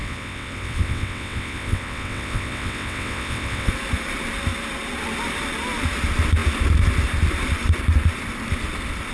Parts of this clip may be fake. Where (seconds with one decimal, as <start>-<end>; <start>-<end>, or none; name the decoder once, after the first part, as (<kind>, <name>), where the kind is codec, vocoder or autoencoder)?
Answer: 0.0-3.7 (vocoder, WaveNeXt)